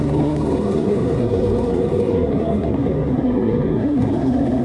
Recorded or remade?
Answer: remade